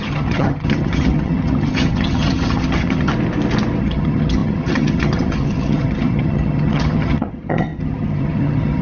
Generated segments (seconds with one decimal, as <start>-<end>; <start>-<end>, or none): 0.0-3.1; 3.8-8.8